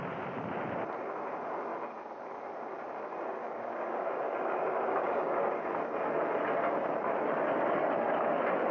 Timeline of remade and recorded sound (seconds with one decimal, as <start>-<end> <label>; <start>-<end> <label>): 0.0-3.4 recorded; 3.4-5.6 remade; 5.6-8.7 recorded